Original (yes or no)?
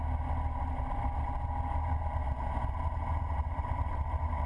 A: yes